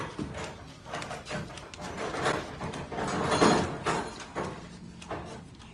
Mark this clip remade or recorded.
recorded